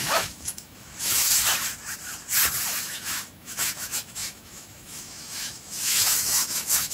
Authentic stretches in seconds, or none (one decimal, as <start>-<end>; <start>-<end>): 1.3-2.8